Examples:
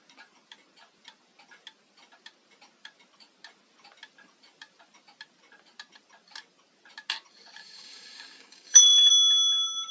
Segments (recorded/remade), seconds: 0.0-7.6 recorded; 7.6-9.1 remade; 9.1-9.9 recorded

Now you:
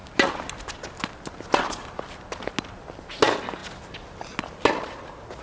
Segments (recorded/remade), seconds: 0.0-5.4 recorded

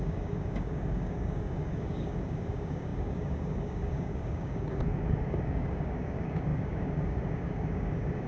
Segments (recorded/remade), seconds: 0.0-8.3 remade

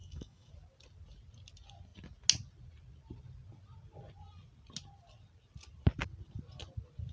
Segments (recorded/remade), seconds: 0.0-0.5 remade; 0.5-7.1 recorded

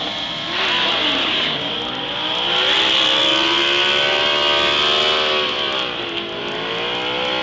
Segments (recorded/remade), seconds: 0.0-1.2 recorded; 1.2-1.7 remade; 1.7-7.4 recorded